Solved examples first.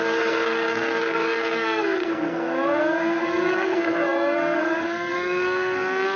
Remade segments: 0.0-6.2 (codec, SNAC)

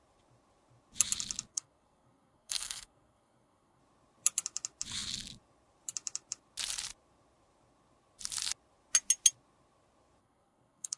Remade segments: 1.5-3.8 (codec, SNAC); 10.2-11.0

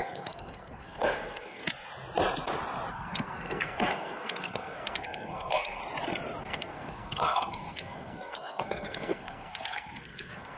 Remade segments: 0.0-1.6 (codec, SNAC); 2.9-5.8; 6.4-10.6

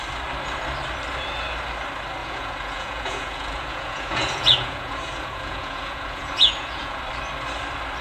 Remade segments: 2.2-7.0 (vocoder, Vocos)

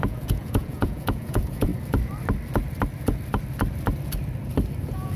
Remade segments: 0.0-1.7 (vocoder, Vocos); 4.8-5.2